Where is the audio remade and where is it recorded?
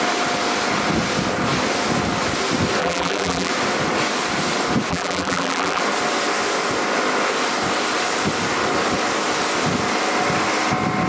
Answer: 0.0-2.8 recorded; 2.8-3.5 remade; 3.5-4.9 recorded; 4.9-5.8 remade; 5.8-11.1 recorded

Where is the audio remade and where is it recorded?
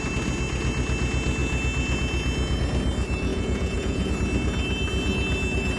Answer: 0.0-3.3 recorded; 3.3-4.1 remade; 4.1-5.8 recorded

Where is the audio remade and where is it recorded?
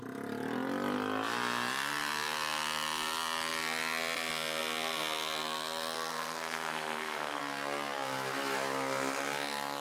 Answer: 0.0-6.1 recorded; 6.1-7.4 remade; 7.4-9.8 recorded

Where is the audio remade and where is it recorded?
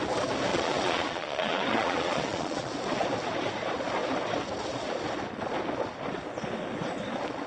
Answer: 0.0-0.5 recorded; 0.5-2.7 remade; 2.7-7.5 recorded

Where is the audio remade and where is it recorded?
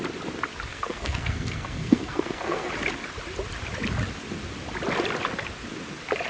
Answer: 0.0-0.7 recorded; 0.7-2.7 remade; 2.7-6.3 recorded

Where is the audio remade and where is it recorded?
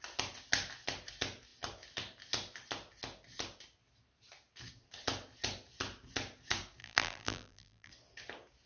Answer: 0.0-6.8 recorded; 6.8-7.9 remade; 7.9-8.7 recorded